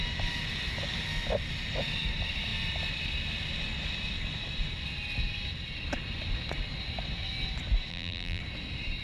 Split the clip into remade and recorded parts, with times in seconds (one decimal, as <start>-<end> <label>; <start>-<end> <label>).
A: 0.0-7.9 recorded; 7.9-8.4 remade; 8.4-9.0 recorded